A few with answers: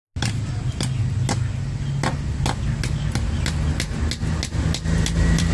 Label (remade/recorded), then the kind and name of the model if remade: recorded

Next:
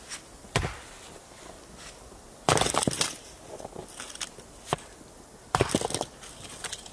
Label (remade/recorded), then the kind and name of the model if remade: recorded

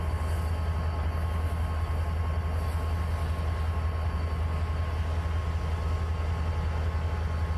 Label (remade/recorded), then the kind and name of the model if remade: recorded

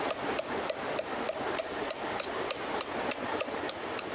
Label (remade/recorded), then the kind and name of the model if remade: recorded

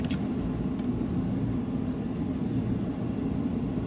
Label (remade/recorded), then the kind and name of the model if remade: recorded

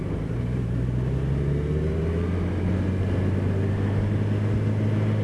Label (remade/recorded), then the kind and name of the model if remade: recorded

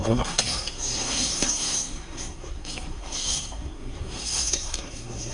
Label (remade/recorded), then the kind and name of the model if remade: remade, codec, SNAC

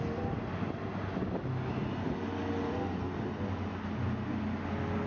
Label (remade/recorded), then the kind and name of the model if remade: recorded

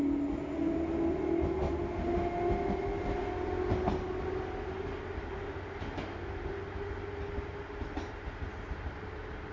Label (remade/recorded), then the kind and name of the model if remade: recorded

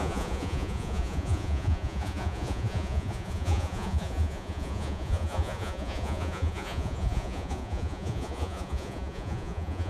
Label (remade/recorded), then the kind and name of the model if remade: remade, vocoder, Vocos